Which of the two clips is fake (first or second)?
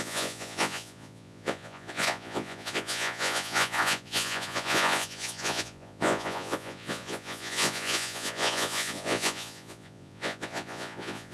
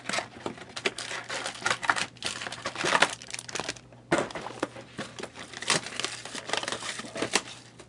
first